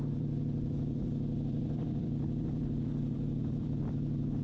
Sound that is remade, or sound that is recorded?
remade